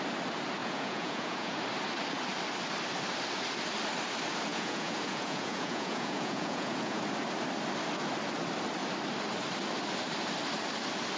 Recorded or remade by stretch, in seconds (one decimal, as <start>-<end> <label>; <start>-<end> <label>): 0.0-0.6 recorded; 0.6-1.6 remade; 1.6-4.5 recorded; 4.5-7.0 remade; 7.0-11.2 recorded